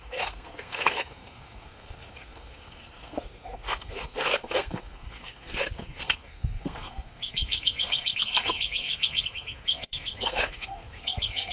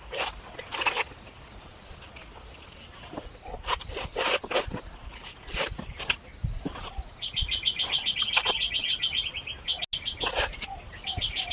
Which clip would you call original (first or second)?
second